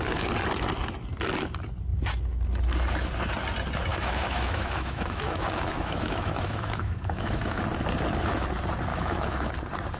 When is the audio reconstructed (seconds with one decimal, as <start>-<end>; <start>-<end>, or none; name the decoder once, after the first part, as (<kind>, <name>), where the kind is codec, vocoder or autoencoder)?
3.9-7.6 (autoencoder, DAC-VAE); 8.9-9.5